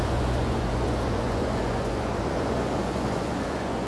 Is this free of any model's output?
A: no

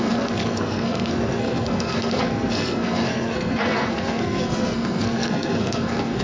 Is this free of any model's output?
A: no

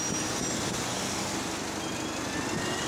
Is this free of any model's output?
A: yes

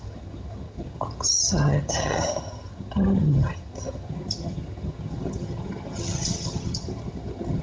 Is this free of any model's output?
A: no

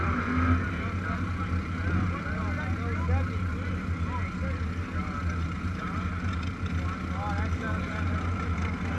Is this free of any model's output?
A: yes